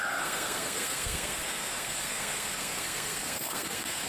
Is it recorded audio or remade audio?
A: remade